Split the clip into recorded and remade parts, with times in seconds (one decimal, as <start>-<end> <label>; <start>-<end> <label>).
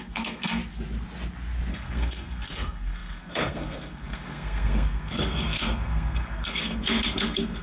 0.0-0.6 remade; 0.6-1.7 recorded; 1.7-7.6 remade